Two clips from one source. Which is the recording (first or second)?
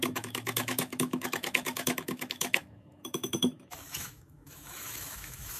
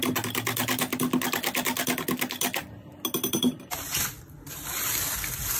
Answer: second